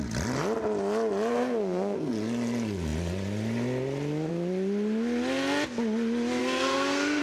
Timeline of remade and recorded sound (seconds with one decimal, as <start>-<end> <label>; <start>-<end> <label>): 0.0-1.3 recorded; 1.3-2.1 remade; 2.1-6.4 recorded; 6.4-7.2 remade